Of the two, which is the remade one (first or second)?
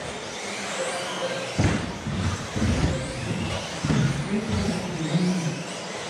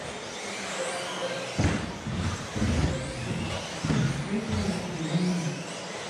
first